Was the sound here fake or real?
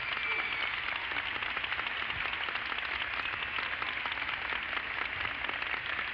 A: real